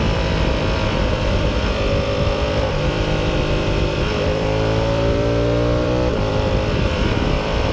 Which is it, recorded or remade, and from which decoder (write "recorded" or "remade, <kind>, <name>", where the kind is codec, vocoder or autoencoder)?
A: remade, vocoder, BigVGAN v2